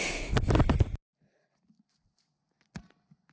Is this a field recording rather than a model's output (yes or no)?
yes